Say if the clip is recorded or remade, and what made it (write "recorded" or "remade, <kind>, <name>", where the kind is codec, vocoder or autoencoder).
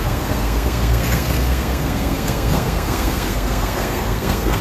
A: remade, codec, SNAC